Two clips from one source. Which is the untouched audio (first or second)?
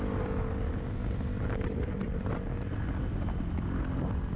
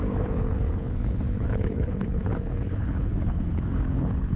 first